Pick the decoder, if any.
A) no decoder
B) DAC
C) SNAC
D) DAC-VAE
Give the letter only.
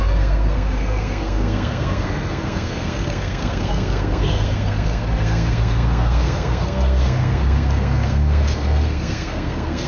C